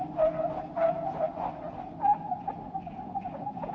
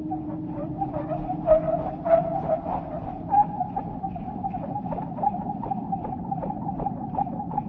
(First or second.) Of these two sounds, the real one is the first